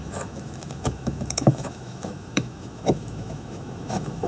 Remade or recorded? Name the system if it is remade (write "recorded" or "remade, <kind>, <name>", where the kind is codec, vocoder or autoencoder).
remade, autoencoder, DAC-VAE